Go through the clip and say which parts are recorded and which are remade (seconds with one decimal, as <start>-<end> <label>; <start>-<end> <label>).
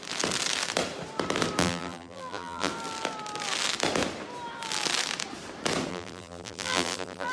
0.0-1.6 recorded; 1.6-2.7 remade; 2.7-5.9 recorded; 5.9-7.3 remade